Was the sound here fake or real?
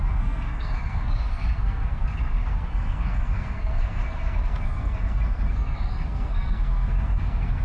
fake